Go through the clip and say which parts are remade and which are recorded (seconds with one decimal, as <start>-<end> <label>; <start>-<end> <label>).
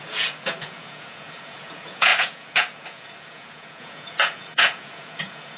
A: 0.0-5.6 remade